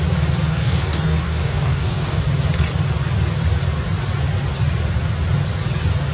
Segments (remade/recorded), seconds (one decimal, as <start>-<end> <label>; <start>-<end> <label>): 0.0-0.4 recorded; 0.4-2.2 remade; 2.2-6.1 recorded